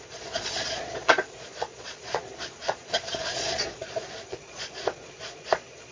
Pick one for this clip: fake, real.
fake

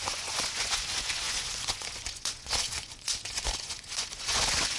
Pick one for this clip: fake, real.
fake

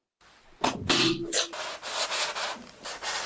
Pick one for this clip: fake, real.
real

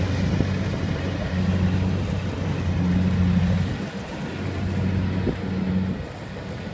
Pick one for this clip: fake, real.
real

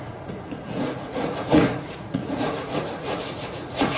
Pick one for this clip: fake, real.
fake